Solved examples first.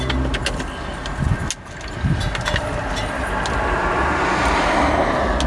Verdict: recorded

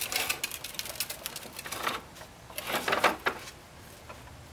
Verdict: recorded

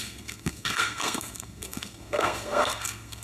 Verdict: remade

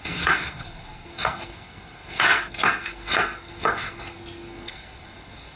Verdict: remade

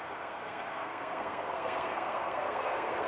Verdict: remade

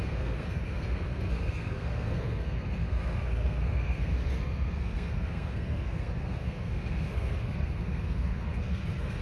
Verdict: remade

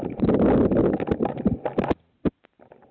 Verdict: recorded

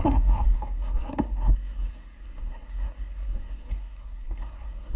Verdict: remade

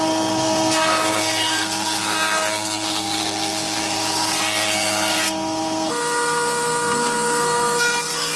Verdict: remade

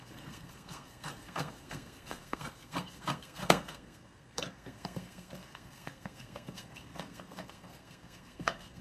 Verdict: remade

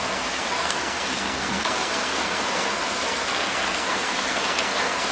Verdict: remade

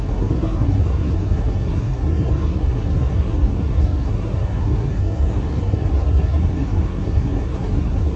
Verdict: remade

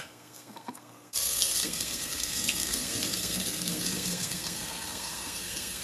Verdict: remade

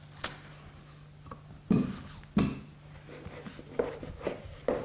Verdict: recorded